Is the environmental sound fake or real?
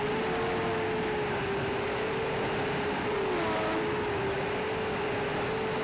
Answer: real